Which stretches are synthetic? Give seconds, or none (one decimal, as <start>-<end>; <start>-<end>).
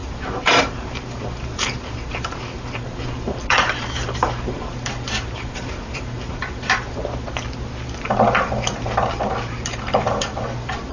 0.0-7.0; 8.0-10.9